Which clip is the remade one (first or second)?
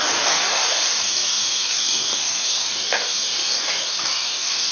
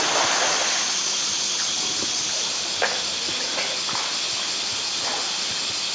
first